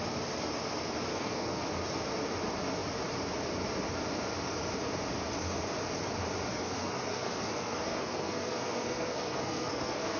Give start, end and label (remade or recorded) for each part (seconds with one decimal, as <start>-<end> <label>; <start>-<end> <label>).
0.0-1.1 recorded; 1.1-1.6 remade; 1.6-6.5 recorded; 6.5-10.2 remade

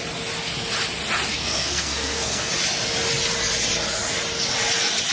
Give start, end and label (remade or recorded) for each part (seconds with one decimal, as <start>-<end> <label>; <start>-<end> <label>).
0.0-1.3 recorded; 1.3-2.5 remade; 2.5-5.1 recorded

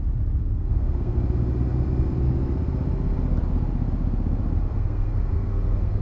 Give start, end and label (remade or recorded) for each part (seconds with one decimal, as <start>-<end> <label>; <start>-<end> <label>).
0.0-0.4 recorded; 0.4-1.2 remade; 1.2-4.7 recorded; 4.7-6.0 remade

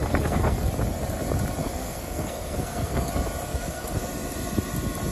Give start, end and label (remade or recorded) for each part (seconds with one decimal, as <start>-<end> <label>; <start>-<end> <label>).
0.0-0.7 remade; 0.7-1.6 recorded; 1.6-3.1 remade; 3.1-3.5 recorded; 3.5-4.0 remade; 4.0-5.1 recorded

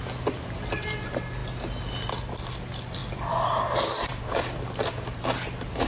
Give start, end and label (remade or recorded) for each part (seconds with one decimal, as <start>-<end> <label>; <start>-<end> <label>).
0.0-5.9 recorded

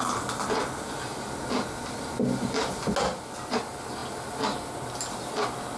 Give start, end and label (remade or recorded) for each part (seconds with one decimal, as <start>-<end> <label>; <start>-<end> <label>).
0.0-5.8 recorded

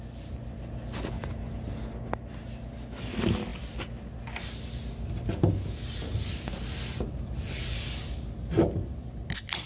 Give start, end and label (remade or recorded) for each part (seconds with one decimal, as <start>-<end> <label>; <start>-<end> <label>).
0.0-9.7 recorded